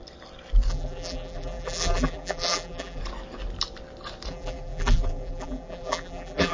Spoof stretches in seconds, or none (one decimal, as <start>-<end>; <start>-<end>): 0.7-3.0; 4.3-6.5